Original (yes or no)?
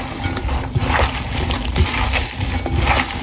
yes